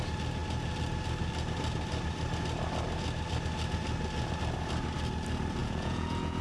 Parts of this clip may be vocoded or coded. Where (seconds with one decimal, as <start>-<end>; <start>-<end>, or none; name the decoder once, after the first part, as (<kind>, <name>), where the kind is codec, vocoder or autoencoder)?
5.6-6.4 (vocoder, Vocos)